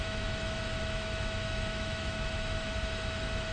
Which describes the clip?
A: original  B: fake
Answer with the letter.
B